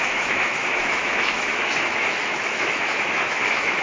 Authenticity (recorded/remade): remade